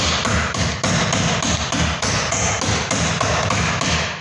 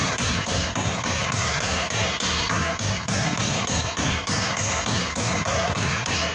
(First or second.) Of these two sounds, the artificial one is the second